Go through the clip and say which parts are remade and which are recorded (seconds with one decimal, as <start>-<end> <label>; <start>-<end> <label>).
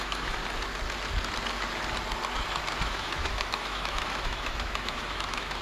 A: 0.0-0.4 remade; 0.4-2.8 recorded; 2.8-5.6 remade